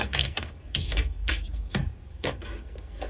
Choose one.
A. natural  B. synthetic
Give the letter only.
B